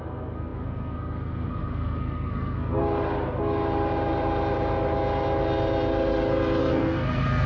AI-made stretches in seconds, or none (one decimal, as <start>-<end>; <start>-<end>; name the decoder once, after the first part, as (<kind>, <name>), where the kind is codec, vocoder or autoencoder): 0.0-2.8 (codec, SNAC); 6.6-7.5